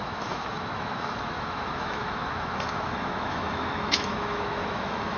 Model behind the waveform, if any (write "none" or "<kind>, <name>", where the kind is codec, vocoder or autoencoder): autoencoder, DAC-VAE